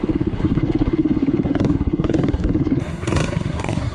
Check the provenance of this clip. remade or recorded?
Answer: remade